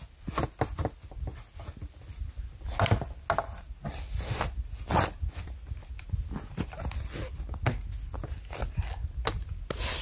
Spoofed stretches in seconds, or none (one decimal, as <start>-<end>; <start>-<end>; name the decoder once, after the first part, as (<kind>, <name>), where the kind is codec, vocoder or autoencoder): none